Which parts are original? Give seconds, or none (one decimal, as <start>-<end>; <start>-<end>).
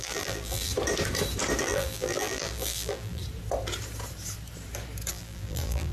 0.7-1.6; 3.2-5.1